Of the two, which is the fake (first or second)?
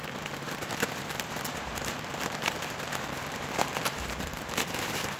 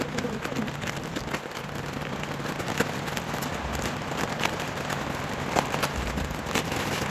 first